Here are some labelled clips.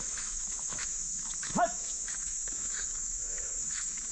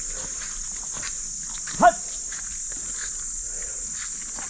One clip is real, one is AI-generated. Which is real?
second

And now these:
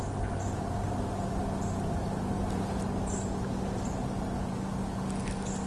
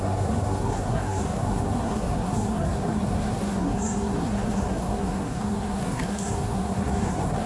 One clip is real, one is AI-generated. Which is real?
first